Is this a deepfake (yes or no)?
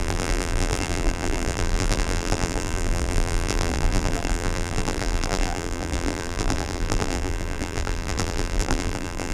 yes